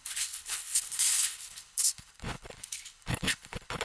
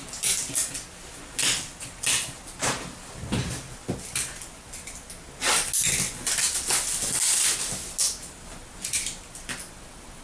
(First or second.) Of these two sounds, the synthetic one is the first